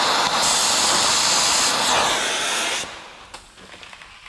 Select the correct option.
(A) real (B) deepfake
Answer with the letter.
A